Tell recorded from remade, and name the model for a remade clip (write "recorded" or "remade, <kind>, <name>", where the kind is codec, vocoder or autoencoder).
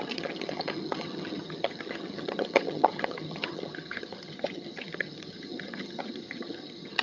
remade, vocoder, HiFi-GAN